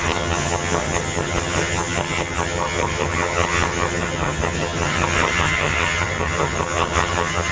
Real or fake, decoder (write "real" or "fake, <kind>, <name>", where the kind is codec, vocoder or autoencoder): fake, vocoder, HiFi-GAN